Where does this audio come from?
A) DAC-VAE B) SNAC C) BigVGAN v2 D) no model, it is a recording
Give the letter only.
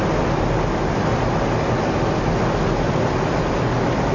D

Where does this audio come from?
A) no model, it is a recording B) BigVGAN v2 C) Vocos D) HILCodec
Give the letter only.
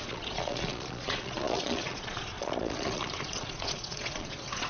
C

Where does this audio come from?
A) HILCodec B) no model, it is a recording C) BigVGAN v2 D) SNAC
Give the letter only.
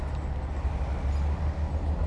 B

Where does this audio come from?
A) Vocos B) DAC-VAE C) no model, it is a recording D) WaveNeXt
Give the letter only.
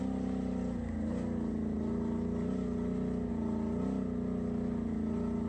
C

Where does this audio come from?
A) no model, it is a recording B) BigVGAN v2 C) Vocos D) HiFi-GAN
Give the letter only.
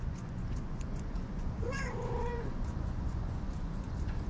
C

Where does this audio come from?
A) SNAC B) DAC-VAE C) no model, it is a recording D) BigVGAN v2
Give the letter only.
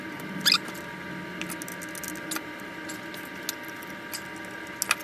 C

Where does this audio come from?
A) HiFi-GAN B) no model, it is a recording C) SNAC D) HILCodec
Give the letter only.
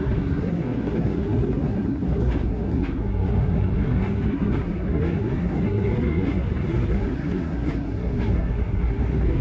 C